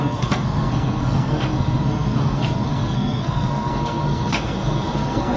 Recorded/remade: remade